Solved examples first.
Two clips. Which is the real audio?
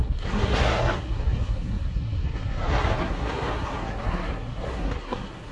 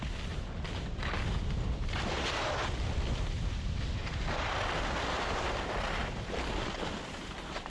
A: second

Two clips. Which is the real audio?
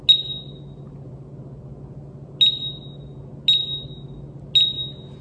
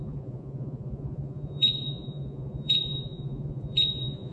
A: first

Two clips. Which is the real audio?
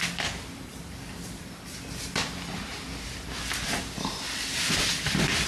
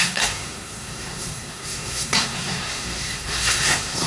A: first